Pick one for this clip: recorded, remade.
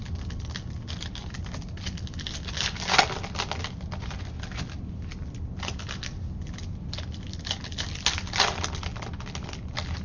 recorded